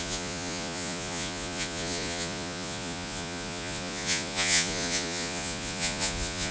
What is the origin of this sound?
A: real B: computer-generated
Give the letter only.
B